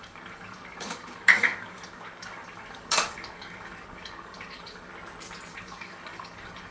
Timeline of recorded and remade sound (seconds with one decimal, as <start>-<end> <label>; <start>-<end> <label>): 0.0-4.9 remade; 4.9-5.5 recorded; 5.5-6.7 remade